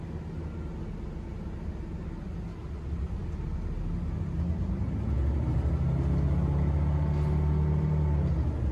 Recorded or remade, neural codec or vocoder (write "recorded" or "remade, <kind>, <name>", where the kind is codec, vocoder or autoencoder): recorded